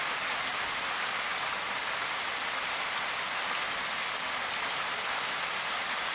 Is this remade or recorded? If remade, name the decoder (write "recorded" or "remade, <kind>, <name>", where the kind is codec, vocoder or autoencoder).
recorded